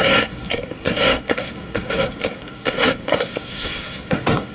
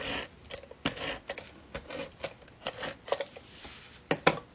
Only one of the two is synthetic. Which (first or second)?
first